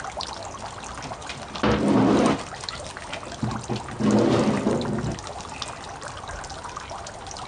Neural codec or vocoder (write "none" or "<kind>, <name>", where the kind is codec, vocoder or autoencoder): none